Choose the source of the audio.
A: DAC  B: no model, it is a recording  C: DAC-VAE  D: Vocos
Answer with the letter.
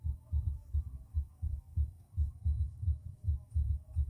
A